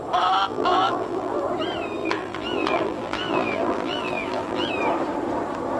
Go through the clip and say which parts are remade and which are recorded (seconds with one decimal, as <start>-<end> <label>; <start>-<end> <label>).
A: 0.0-0.4 recorded; 0.4-1.4 remade; 1.4-2.0 recorded; 2.0-4.7 remade; 4.7-5.8 recorded